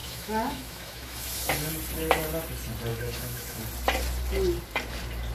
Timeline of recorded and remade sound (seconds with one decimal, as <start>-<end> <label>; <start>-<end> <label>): 0.0-1.5 remade; 1.5-2.9 recorded; 2.9-3.6 remade; 3.6-5.3 recorded